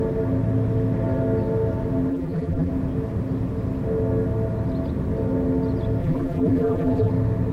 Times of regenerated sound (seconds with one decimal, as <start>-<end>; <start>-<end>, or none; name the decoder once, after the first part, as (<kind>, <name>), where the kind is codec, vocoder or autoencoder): 2.1-2.7 (vocoder, BigVGAN v2); 6.0-7.1